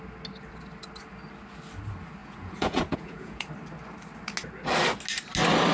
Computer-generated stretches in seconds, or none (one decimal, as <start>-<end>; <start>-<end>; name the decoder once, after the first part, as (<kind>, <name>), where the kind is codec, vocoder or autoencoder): 2.2-3.5 (vocoder, Vocos)